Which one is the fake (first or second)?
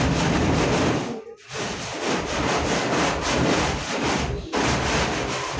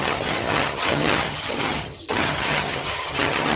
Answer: second